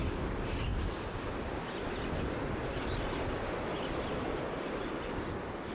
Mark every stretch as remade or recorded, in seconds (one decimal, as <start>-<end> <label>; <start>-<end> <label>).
0.0-5.7 recorded

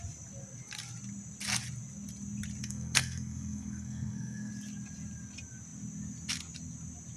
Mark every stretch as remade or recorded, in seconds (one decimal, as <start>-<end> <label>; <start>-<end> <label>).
0.0-2.6 recorded; 2.6-4.5 remade; 4.5-7.2 recorded

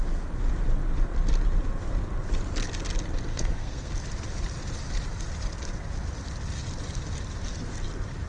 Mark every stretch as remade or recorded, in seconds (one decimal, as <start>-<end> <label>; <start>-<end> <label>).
0.0-3.3 recorded; 3.3-3.9 remade; 3.9-8.3 recorded

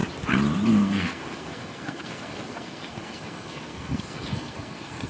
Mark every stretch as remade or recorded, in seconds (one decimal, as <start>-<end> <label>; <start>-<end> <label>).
0.0-0.7 recorded; 0.7-5.1 remade

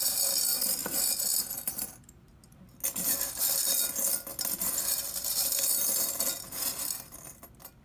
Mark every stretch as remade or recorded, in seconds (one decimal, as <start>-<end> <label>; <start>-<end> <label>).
0.0-7.8 recorded

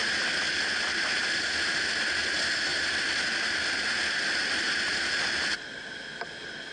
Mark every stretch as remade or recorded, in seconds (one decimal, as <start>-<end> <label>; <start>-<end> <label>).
0.0-6.7 recorded